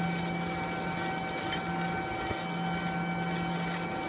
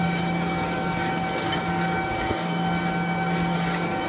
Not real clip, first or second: second